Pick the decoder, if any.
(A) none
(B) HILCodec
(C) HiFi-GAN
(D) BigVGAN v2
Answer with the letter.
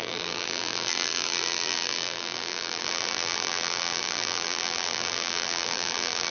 D